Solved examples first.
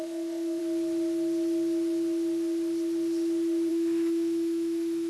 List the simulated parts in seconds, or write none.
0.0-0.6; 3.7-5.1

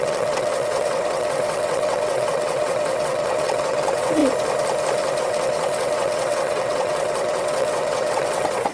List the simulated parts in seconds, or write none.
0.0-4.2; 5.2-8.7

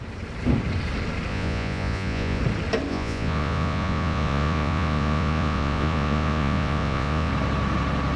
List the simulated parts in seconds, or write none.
1.3-2.4; 2.9-7.3

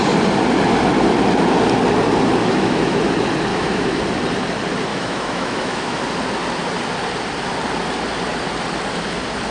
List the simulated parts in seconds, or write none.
2.4-3.0; 3.5-4.0; 4.9-6.0

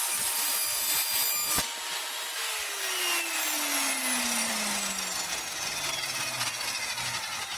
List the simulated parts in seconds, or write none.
none